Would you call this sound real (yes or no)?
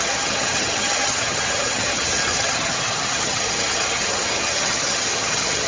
no